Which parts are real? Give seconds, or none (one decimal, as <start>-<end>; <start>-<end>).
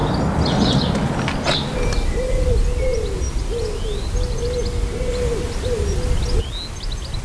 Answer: 0.0-7.2